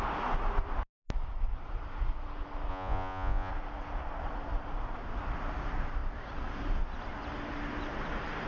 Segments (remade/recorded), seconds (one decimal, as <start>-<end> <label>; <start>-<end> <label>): 0.0-2.7 recorded; 2.7-3.5 remade; 3.5-8.5 recorded